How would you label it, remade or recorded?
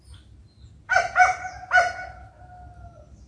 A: recorded